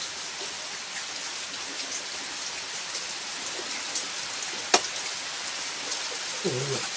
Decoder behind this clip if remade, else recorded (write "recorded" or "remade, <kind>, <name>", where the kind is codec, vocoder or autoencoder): recorded